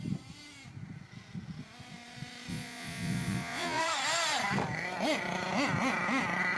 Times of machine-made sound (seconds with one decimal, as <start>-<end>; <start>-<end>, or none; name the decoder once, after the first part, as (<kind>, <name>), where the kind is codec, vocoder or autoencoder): 2.5-3.8 (vocoder, Vocos)